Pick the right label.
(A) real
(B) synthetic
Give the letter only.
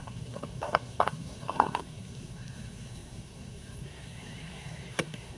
B